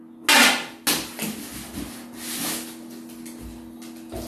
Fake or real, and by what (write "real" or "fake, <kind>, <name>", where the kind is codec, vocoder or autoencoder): real